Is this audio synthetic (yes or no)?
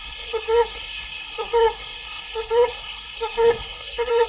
yes